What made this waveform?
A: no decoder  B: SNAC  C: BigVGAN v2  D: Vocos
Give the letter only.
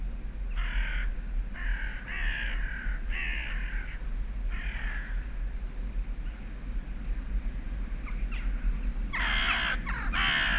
A